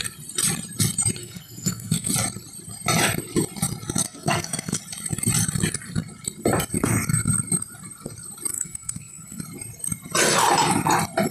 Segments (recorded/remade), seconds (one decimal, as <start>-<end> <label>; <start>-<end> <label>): 0.0-1.2 recorded; 1.2-2.1 remade; 2.1-4.0 recorded; 4.0-4.8 remade; 4.8-8.5 recorded; 8.5-9.4 remade; 9.4-11.3 recorded